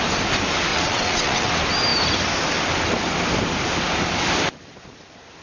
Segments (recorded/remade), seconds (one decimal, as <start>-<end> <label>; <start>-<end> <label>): 0.0-0.7 recorded; 0.7-1.5 remade; 1.5-5.4 recorded